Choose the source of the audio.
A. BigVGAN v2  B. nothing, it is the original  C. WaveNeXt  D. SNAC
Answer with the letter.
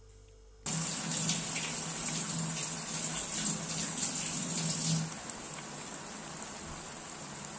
B